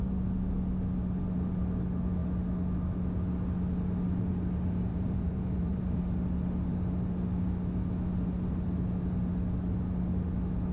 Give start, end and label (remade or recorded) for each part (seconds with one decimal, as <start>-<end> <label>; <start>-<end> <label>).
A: 0.0-4.9 recorded; 4.9-6.0 remade; 6.0-10.7 recorded